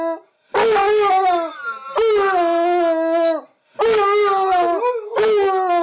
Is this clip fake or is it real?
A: real